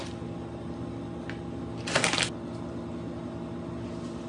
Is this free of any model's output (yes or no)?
yes